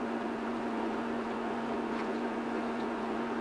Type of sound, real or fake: fake